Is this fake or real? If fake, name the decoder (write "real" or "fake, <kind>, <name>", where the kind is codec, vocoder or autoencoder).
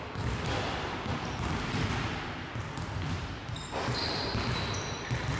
real